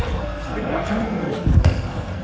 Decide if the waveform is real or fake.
fake